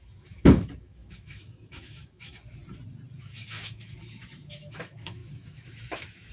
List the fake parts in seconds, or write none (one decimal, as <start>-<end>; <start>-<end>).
0.0-2.6; 3.2-6.3